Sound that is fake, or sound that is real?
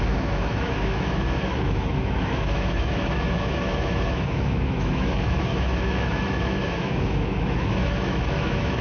fake